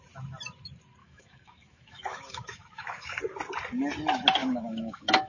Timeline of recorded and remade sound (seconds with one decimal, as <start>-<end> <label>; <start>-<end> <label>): 0.0-1.0 recorded; 1.0-3.2 remade; 3.2-4.4 recorded; 4.4-5.3 remade